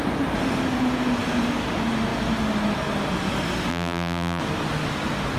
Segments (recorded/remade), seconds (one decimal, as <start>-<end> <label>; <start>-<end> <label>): 0.0-3.7 recorded; 3.7-4.4 remade; 4.4-5.4 recorded

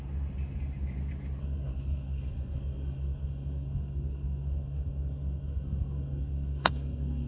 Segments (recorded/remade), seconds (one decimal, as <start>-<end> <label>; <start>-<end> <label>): 0.0-1.4 recorded; 1.4-7.3 remade

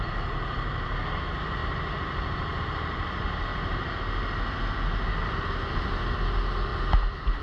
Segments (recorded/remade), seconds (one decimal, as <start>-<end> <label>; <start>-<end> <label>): 0.0-3.5 recorded; 3.5-4.0 remade; 4.0-7.4 recorded

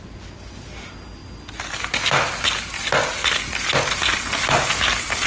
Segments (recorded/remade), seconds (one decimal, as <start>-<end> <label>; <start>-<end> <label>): 0.0-5.3 recorded

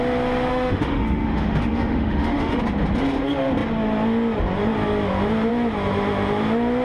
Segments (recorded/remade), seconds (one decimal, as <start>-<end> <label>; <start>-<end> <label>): 0.0-0.5 recorded; 0.5-2.6 remade; 2.6-6.8 recorded